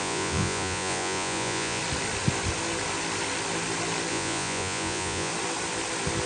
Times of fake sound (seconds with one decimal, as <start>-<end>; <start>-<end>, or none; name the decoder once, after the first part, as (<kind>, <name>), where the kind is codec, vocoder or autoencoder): 0.0-1.8 (vocoder, Vocos); 4.1-5.3

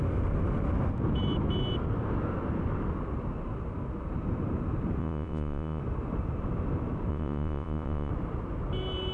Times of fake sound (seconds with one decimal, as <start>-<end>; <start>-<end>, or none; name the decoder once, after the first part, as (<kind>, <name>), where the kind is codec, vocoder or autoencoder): 5.0-5.8 (vocoder, Vocos); 7.1-8.1

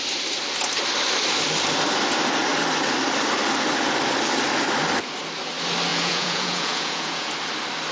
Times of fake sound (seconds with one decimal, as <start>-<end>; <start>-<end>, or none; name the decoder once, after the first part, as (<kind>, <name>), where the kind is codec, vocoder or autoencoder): 5.9-7.3 (vocoder, Vocos)

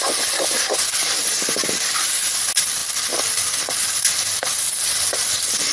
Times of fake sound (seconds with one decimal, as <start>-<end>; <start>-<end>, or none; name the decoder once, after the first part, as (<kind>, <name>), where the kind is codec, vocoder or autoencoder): none

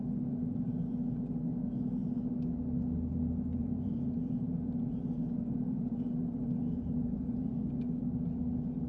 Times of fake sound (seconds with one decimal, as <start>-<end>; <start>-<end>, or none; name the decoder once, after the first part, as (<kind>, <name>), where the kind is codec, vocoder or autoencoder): 3.6-7.7 (vocoder, Vocos)

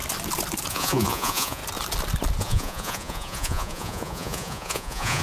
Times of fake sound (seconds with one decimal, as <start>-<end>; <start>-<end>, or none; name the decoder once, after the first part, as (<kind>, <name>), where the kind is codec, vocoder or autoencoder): 0.7-1.6 (vocoder, Vocos); 2.4-5.2

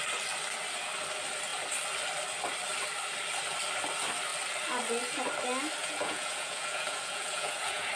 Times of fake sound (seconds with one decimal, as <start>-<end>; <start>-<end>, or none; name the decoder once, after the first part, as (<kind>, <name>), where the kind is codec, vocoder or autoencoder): 5.8-7.9 (vocoder, Vocos)

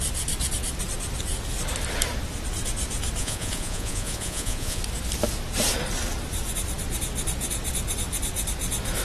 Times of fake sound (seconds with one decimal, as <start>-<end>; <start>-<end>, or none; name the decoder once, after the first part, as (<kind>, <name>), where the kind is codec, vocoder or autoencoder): 3.2-4.8 (vocoder, Vocos)